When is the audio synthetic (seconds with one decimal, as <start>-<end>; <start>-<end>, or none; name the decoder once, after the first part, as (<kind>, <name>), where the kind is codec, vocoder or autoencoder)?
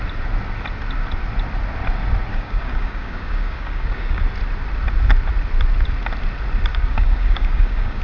2.3-4.2 (codec, DAC); 6.7-8.0